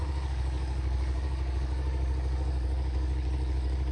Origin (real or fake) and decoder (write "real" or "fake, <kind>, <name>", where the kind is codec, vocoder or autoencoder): fake, codec, DAC